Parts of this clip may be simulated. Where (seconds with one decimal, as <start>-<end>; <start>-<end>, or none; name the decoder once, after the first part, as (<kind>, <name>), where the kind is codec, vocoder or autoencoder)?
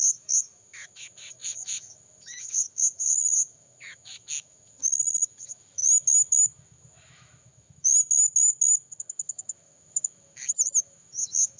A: 0.0-11.6 (autoencoder, DAC-VAE)